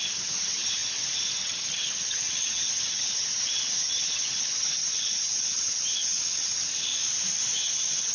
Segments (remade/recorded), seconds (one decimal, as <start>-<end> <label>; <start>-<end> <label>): 0.0-6.9 remade; 6.9-7.6 recorded; 7.6-8.1 remade